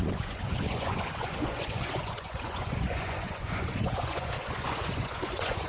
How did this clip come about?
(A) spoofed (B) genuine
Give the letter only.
A